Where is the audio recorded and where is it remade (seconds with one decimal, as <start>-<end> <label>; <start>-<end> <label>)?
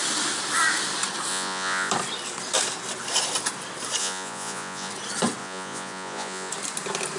0.0-1.3 recorded; 1.3-1.9 remade; 1.9-4.0 recorded; 4.0-4.9 remade; 4.9-5.4 recorded; 5.4-6.5 remade; 6.5-7.2 recorded